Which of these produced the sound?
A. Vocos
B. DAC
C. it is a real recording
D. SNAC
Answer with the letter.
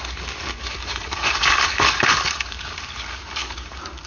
B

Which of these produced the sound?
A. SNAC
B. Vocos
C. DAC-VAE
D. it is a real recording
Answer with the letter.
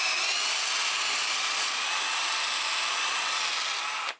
D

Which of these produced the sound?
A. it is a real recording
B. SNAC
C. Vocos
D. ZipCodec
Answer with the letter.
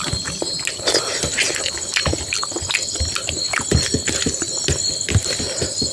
A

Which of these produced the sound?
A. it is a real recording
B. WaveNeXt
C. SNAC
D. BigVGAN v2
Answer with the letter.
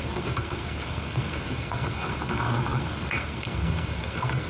C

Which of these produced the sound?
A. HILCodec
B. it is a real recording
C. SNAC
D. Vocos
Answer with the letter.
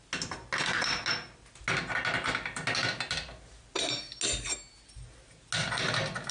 B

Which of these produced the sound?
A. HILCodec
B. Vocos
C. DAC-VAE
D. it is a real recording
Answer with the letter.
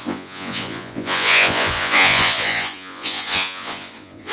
B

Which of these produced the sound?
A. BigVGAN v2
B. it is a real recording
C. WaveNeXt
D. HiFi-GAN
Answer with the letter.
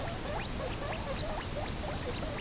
B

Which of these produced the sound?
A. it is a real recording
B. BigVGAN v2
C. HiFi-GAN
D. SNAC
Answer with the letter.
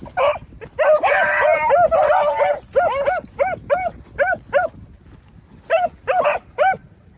A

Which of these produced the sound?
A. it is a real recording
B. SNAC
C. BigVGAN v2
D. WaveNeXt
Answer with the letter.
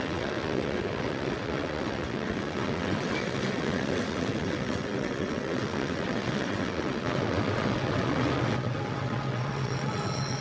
D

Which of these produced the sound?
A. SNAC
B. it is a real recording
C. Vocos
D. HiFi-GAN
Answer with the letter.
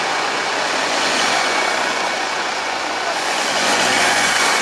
C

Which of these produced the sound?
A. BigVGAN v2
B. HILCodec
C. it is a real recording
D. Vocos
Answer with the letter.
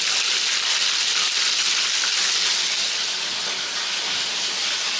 C